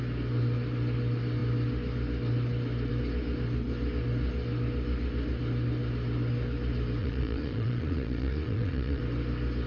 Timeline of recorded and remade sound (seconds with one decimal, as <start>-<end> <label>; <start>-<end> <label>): 0.0-7.0 recorded; 7.0-9.0 remade; 9.0-9.7 recorded